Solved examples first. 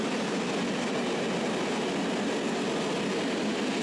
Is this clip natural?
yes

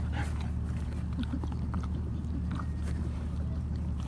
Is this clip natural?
no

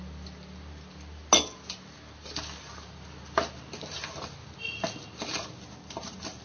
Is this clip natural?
yes